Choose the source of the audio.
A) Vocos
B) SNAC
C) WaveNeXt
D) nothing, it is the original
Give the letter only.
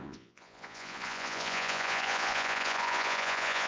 A